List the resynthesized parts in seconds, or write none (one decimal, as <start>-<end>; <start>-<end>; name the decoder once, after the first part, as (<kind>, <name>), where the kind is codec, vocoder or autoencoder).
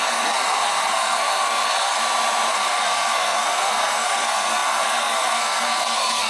0.0-2.0 (codec, SNAC); 2.5-6.3